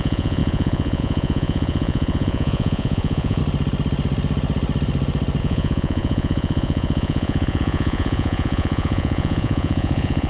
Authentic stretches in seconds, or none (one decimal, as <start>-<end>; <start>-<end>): 3.4-5.4